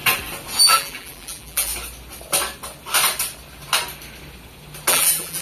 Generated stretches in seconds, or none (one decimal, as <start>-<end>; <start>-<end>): 0.6-1.7; 4.9-5.4